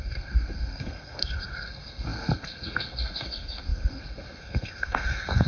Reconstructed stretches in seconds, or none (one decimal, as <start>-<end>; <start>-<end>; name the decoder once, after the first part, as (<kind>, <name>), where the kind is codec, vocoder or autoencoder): 0.0-5.5 (codec, SNAC)